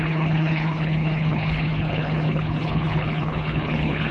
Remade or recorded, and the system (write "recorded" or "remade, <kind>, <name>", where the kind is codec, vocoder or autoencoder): remade, codec, HILCodec